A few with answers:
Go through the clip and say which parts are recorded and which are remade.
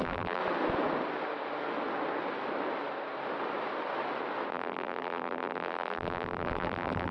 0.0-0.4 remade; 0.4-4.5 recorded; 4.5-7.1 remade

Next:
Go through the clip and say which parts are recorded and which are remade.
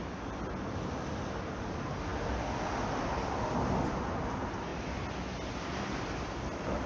0.0-6.9 recorded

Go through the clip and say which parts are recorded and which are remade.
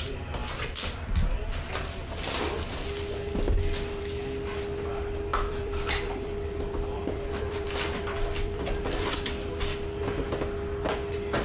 0.0-5.3 recorded; 5.3-9.5 remade; 9.5-11.4 recorded